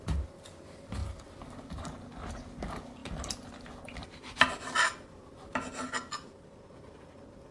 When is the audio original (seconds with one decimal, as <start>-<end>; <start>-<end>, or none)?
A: 0.0-7.5